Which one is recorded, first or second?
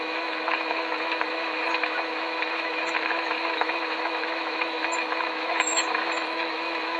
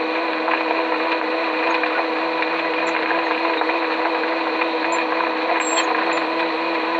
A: second